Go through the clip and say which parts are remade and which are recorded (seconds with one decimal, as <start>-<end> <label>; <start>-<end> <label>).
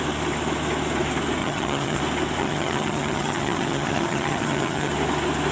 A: 0.0-1.4 recorded; 1.4-2.0 remade; 2.0-2.4 recorded; 2.4-4.9 remade; 4.9-5.5 recorded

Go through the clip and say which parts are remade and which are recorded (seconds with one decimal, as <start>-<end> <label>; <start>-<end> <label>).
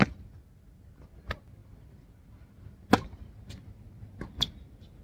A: 0.0-5.0 recorded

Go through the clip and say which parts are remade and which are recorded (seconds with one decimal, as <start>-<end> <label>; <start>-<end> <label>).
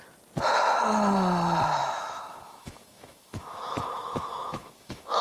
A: 0.0-1.8 recorded; 1.8-5.2 remade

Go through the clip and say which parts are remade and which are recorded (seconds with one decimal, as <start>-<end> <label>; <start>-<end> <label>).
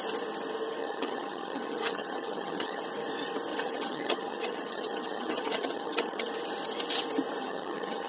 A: 0.0-0.8 recorded; 0.8-2.8 remade; 2.8-3.5 recorded; 3.5-6.3 remade; 6.3-7.4 recorded; 7.4-8.1 remade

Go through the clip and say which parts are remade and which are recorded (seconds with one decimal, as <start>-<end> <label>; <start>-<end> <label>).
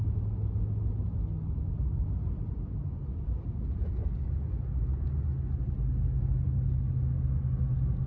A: 0.0-8.1 recorded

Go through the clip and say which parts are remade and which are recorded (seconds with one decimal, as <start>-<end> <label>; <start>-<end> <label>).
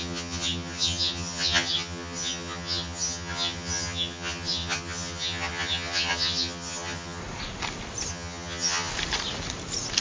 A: 0.0-7.2 remade; 7.2-8.1 recorded; 8.1-8.9 remade; 8.9-10.0 recorded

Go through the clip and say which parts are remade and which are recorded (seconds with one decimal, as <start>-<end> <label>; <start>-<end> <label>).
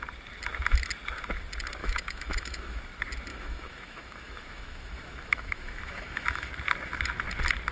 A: 0.0-1.8 recorded; 1.8-2.8 remade; 2.8-3.3 recorded; 3.3-6.5 remade; 6.5-7.7 recorded